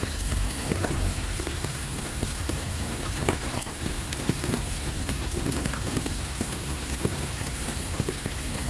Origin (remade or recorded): remade